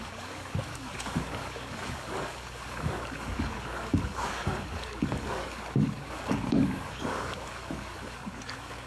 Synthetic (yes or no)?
yes